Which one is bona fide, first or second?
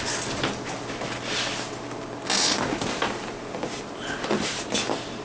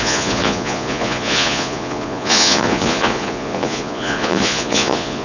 first